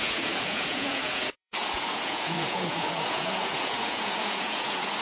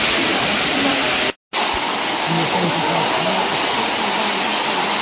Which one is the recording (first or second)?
second